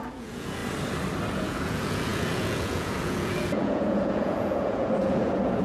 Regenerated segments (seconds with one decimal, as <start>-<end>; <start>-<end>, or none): 0.0-0.6; 1.3-5.6